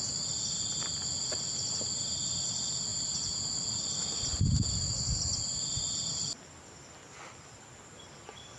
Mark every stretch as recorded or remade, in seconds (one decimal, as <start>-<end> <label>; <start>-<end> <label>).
0.0-8.6 recorded